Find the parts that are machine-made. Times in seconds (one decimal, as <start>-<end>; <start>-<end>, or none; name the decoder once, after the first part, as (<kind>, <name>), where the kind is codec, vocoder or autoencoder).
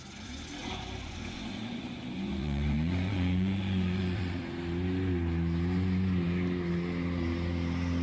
0.6-4.4 (vocoder, Vocos)